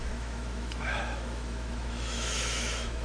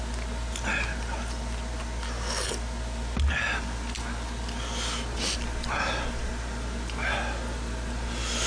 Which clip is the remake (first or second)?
first